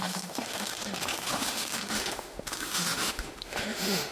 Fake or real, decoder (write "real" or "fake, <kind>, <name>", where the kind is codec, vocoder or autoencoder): fake, autoencoder, DAC-VAE